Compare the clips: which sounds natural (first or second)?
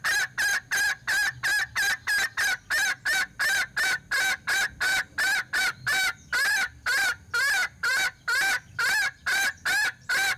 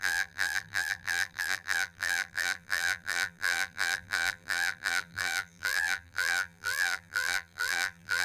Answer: first